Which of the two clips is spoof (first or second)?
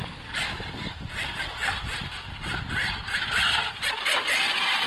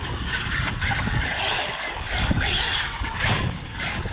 second